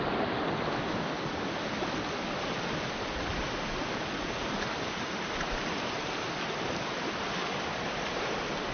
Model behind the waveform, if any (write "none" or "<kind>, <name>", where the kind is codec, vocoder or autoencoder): none